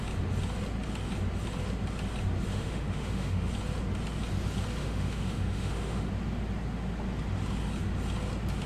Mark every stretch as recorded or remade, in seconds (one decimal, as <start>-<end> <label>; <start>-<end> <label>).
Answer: 0.0-2.5 recorded; 2.5-3.5 remade; 3.5-4.8 recorded; 4.8-6.1 remade; 6.1-8.7 recorded